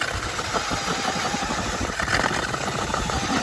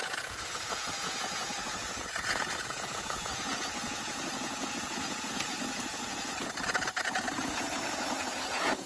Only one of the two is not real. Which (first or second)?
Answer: second